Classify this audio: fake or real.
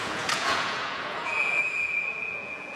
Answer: fake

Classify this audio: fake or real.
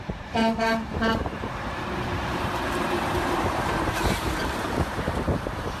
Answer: fake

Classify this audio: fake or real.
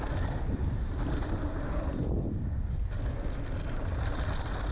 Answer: real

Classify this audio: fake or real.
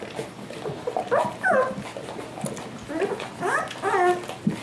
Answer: real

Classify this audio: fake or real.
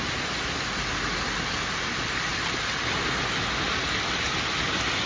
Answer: real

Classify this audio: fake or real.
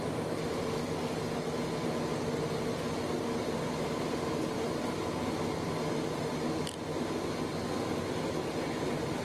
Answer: real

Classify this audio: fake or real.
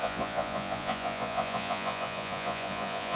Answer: fake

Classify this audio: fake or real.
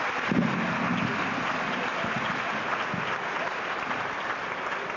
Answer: real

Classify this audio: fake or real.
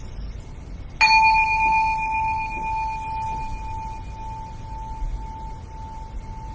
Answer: real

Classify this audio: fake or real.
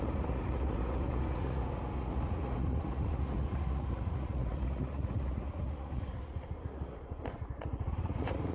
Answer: fake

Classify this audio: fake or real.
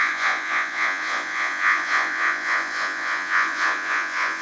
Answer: fake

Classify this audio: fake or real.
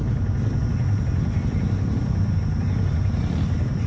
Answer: real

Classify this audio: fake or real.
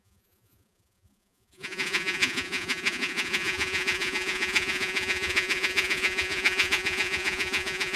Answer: fake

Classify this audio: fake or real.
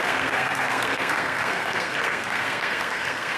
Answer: fake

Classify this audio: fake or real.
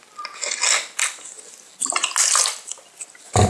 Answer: real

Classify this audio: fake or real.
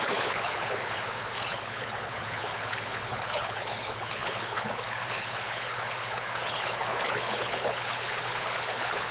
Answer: fake